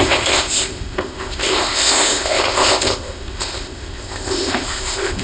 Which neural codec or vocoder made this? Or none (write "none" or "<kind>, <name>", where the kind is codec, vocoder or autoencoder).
codec, ZipCodec